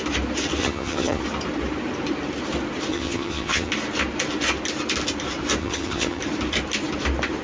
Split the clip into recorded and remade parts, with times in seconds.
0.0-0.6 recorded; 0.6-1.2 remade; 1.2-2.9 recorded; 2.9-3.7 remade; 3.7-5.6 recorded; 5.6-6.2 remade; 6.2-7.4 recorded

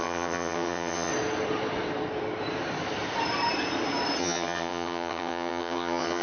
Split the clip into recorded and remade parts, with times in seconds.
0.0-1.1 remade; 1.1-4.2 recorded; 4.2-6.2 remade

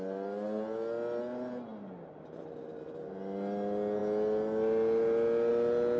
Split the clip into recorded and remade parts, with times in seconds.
0.0-6.0 recorded

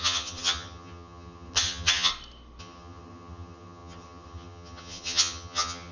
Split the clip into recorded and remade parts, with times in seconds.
0.0-2.1 remade; 2.1-2.6 recorded; 2.6-5.9 remade

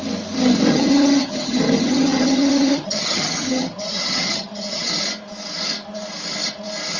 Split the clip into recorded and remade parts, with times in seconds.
0.0-0.7 recorded; 0.7-4.9 remade; 4.9-7.0 recorded